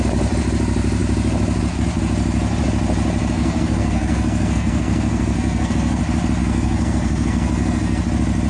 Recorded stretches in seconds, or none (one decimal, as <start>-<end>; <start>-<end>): 0.0-3.2; 6.0-6.4; 8.0-8.5